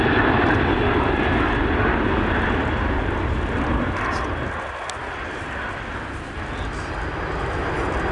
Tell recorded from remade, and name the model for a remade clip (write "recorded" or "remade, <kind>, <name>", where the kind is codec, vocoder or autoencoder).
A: recorded